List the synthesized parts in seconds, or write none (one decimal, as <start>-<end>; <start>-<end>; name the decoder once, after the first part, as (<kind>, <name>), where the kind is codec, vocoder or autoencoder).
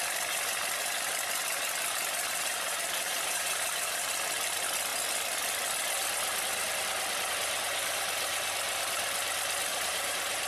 2.5-4.1 (vocoder, BigVGAN v2); 9.7-10.5